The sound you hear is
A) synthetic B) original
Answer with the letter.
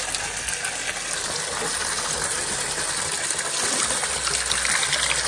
B